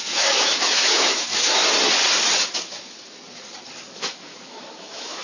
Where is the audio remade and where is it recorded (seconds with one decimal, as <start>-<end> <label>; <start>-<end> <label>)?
0.0-1.6 remade; 1.6-3.9 recorded; 3.9-5.2 remade